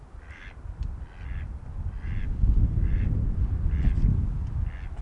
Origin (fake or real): real